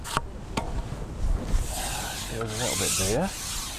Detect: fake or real real